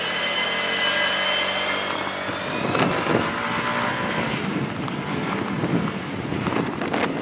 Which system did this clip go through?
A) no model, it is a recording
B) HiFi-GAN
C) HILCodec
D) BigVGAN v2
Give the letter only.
A